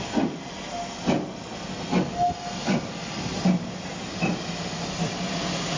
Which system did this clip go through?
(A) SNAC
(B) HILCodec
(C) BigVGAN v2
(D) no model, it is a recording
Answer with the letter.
D